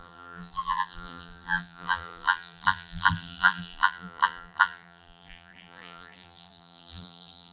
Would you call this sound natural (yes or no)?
no